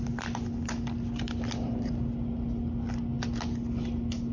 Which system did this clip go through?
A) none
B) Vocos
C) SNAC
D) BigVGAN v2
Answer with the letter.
A